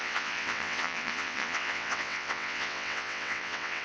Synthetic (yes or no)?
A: yes